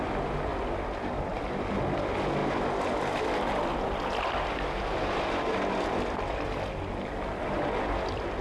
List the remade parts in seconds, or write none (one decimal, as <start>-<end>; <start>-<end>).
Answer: none